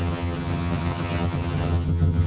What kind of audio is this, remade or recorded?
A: remade